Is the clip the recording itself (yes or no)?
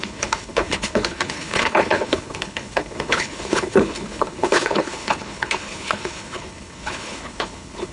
no